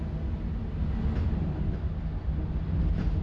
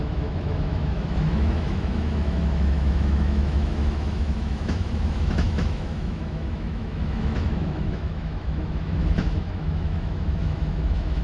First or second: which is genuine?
first